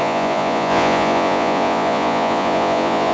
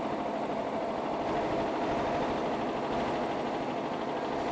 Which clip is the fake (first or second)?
first